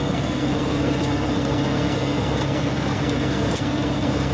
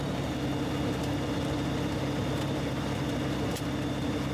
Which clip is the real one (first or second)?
second